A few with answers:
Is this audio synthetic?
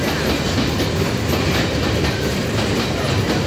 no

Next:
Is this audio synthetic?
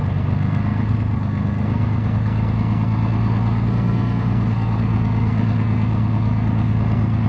yes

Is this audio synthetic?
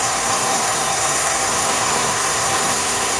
yes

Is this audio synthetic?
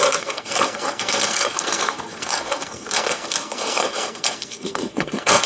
yes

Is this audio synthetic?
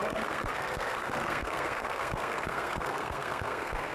yes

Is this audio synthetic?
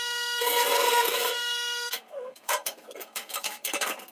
yes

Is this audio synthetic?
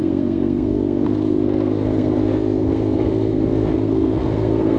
yes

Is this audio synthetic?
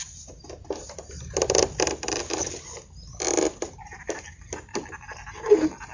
no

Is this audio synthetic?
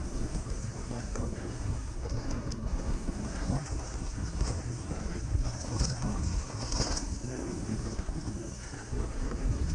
yes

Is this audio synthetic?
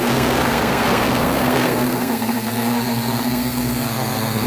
yes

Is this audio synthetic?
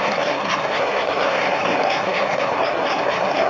yes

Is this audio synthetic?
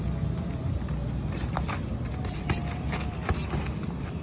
no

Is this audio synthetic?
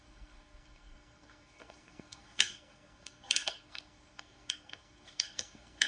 yes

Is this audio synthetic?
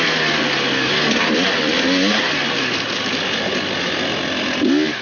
no